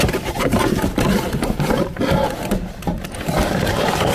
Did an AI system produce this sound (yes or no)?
yes